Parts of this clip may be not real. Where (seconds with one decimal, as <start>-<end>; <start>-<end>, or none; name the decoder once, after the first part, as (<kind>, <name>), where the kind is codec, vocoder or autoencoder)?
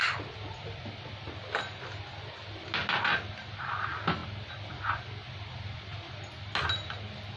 none